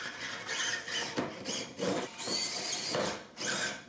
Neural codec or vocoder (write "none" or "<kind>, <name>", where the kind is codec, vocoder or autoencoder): none